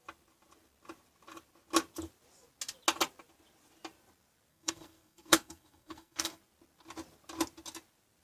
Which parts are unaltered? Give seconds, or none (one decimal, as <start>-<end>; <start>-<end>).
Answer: 0.0-4.5; 6.4-8.2